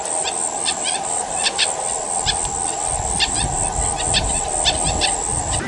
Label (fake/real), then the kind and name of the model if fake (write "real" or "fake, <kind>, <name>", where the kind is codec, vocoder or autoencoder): real